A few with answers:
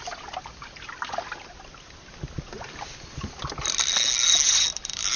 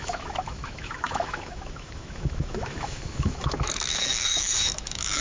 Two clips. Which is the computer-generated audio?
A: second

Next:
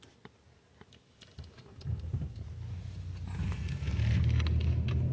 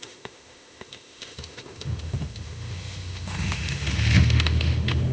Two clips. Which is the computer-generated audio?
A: second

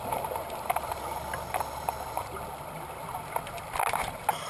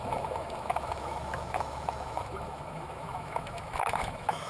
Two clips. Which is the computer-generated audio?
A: second